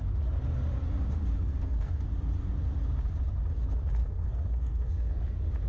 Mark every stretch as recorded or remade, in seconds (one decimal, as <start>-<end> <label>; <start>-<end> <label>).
0.0-1.5 recorded; 1.5-2.1 remade; 2.1-4.0 recorded; 4.0-5.2 remade; 5.2-5.7 recorded